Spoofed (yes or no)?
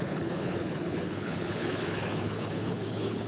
yes